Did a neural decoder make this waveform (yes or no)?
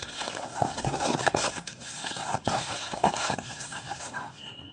yes